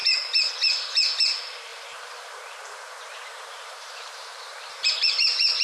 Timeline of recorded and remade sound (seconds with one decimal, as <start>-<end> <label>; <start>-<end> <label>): 0.0-0.5 remade; 0.5-1.7 recorded; 1.7-5.1 remade; 5.1-5.6 recorded